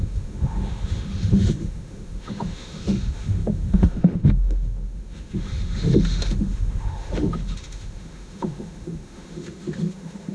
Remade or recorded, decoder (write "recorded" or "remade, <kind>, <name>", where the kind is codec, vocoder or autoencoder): remade, autoencoder, DAC-VAE